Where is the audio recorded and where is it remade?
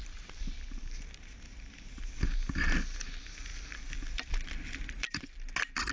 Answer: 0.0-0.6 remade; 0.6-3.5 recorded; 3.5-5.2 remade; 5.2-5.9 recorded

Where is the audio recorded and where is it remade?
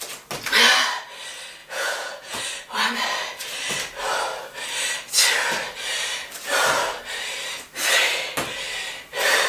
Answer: 0.0-1.6 recorded; 1.6-2.4 remade; 2.4-9.5 recorded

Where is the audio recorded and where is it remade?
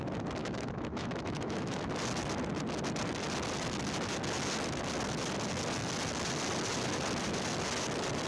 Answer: 0.0-0.4 recorded; 0.4-1.9 remade; 1.9-8.3 recorded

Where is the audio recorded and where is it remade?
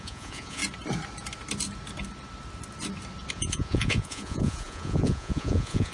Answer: 0.0-0.6 remade; 0.6-3.3 recorded; 3.3-5.9 remade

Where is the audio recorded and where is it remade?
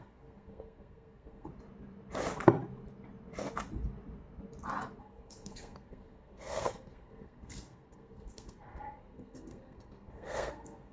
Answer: 0.0-1.5 remade; 1.5-5.0 recorded; 5.0-10.9 remade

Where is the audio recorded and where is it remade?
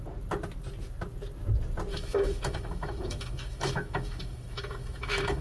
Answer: 0.0-1.9 recorded; 1.9-5.4 remade